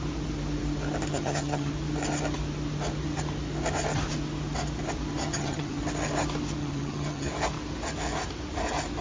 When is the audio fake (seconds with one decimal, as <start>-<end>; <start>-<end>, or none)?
1.1-1.7; 5.2-5.8; 6.6-7.3